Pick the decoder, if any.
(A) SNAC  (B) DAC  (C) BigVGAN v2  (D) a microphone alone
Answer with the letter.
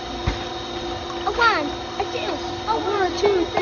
D